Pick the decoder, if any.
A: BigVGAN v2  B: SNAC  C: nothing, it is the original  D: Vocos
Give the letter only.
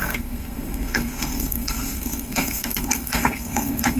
B